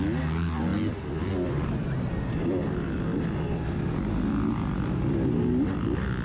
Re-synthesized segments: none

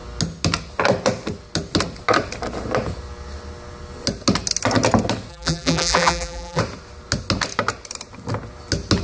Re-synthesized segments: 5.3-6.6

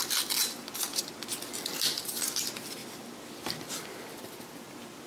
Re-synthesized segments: none

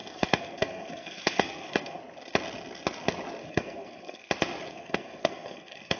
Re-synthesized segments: 0.0-2.0; 3.4-4.3; 4.7-6.0

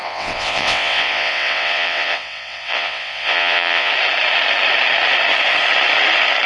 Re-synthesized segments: 0.0-3.9